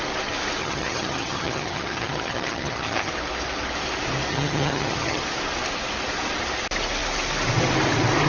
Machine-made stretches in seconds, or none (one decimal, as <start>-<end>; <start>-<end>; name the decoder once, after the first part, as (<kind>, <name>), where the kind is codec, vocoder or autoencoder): 0.6-3.1 (vocoder, HiFi-GAN); 4.3-5.2